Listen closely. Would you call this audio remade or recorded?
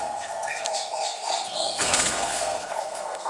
remade